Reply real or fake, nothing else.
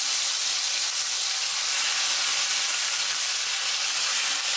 real